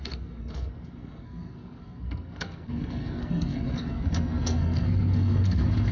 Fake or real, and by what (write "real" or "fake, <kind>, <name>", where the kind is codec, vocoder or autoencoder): fake, codec, SNAC